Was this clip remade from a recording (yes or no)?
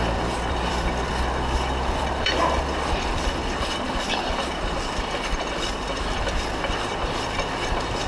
yes